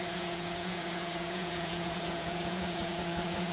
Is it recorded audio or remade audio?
remade